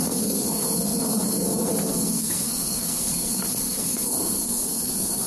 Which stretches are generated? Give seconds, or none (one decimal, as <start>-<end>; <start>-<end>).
0.0-5.3